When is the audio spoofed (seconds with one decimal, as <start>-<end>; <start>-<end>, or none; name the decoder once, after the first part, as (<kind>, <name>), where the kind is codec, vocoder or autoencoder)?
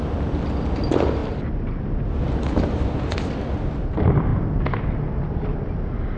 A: none